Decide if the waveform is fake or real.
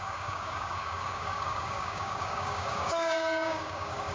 fake